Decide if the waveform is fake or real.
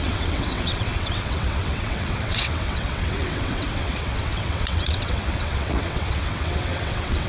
fake